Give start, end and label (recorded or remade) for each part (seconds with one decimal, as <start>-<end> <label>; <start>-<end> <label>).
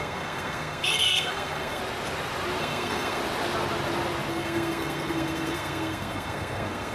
0.0-1.8 remade; 1.8-2.6 recorded; 2.6-3.2 remade; 3.2-4.3 recorded; 4.3-6.9 remade